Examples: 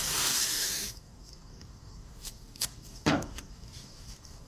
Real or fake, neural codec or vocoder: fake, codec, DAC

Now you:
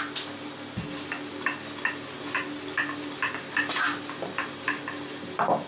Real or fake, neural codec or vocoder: real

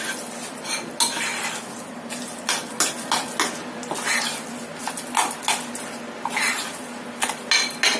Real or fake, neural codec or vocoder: real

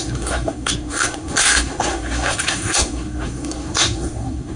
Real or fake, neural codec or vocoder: fake, codec, SNAC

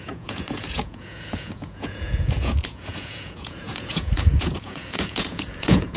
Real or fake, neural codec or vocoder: fake, vocoder, Vocos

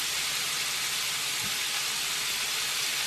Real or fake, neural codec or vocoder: real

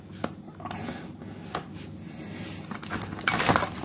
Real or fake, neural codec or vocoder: real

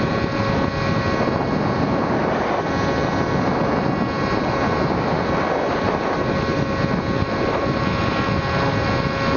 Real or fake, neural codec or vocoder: real